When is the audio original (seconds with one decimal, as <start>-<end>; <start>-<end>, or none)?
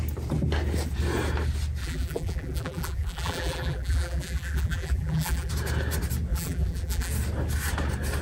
0.0-1.8; 5.5-6.3; 7.1-8.2